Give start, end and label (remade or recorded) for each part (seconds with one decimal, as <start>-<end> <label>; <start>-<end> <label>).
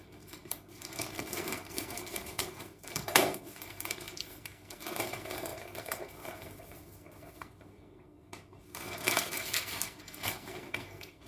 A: 0.0-11.3 remade